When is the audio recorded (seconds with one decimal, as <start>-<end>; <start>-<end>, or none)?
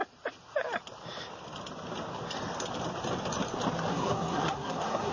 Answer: 0.0-3.9